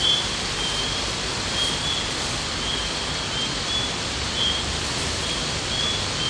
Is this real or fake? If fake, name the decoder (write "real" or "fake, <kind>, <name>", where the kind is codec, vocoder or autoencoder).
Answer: real